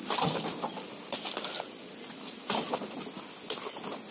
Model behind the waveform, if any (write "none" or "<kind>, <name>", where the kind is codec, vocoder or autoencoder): none